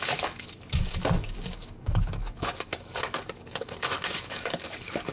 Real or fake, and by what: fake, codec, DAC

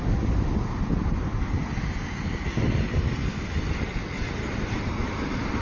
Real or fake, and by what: real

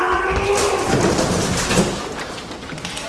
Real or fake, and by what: real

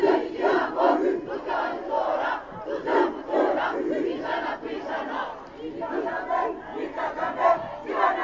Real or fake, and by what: real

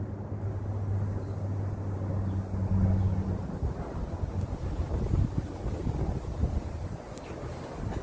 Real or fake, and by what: real